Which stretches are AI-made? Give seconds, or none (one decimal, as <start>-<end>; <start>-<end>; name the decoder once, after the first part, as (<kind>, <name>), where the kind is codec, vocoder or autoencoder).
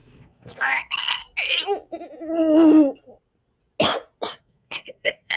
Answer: 0.0-1.2 (codec, SNAC); 4.4-5.4